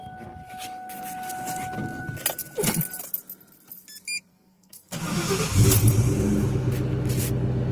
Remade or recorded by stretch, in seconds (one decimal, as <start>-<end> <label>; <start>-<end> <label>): 0.0-4.3 recorded; 4.3-5.0 remade; 5.0-7.7 recorded